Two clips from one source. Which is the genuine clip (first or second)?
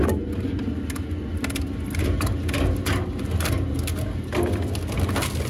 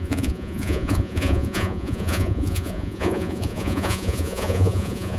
first